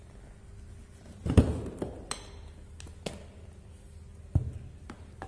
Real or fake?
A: real